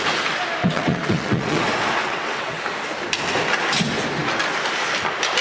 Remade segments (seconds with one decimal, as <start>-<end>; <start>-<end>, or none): 0.6-1.6; 2.0-2.6